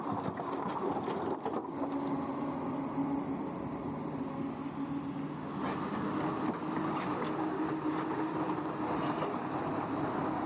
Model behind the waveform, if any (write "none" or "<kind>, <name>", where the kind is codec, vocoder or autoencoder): none